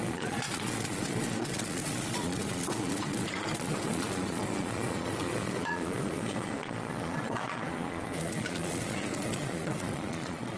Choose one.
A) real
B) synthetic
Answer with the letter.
B